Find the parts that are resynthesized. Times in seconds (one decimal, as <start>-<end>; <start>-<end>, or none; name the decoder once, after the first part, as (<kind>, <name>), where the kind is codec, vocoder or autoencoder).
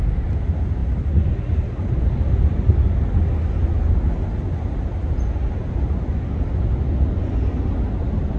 none